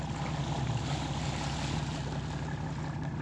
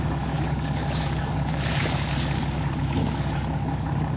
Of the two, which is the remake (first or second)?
second